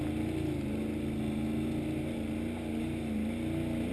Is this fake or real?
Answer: real